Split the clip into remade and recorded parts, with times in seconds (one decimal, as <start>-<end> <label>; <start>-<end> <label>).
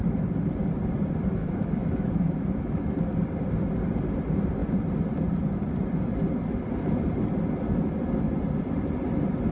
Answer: 0.0-1.4 recorded; 1.4-3.1 remade; 3.1-9.5 recorded